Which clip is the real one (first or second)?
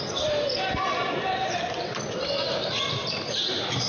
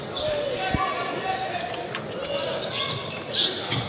second